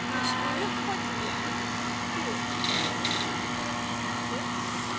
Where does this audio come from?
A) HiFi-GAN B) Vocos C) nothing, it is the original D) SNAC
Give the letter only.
C